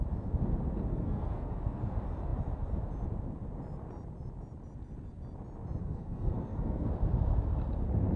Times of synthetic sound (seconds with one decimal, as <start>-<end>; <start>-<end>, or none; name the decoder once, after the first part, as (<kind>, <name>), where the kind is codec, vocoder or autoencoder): 0.9-1.8 (codec, SNAC); 5.8-6.9